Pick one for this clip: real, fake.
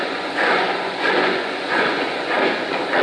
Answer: fake